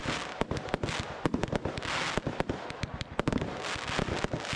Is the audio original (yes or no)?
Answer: yes